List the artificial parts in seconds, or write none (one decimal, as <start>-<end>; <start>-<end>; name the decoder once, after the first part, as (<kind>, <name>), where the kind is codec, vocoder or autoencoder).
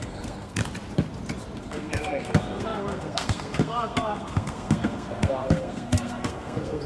0.0-0.6 (codec, SNAC); 1.6-6.9